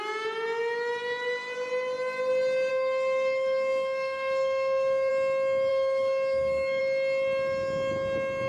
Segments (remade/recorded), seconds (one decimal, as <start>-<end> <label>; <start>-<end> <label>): 0.0-2.7 recorded; 2.7-5.1 remade; 5.1-5.7 recorded; 5.7-6.8 remade; 6.8-8.5 recorded